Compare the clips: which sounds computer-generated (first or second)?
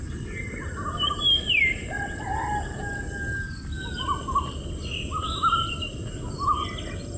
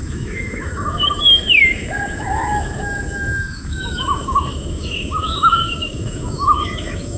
second